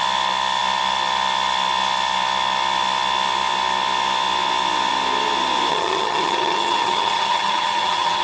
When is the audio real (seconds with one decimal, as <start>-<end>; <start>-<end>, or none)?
0.0-5.7